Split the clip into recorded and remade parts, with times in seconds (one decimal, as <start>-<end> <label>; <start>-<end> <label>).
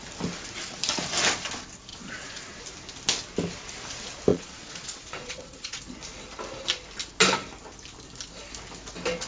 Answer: 0.0-1.9 recorded; 1.9-2.6 remade; 2.6-4.3 recorded; 4.3-5.8 remade; 5.8-9.3 recorded